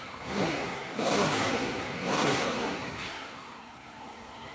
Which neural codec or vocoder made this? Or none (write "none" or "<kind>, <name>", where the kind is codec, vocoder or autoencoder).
codec, SNAC